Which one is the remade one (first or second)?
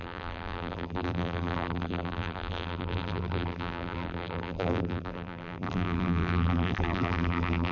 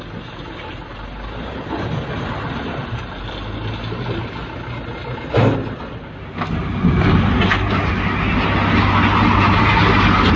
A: first